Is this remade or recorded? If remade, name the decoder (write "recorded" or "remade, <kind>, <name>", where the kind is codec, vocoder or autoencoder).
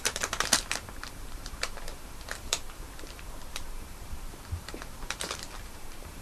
remade, vocoder, BigVGAN v2